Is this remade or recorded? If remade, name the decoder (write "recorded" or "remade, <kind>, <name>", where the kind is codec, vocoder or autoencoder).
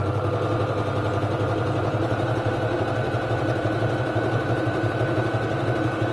remade, vocoder, BigVGAN v2